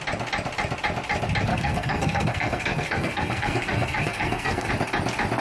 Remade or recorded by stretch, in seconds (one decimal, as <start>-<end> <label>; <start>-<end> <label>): 0.0-1.5 recorded; 1.5-4.7 remade; 4.7-5.4 recorded